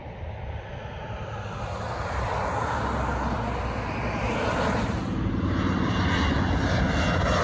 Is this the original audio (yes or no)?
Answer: yes